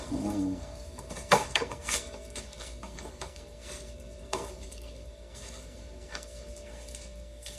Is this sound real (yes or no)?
no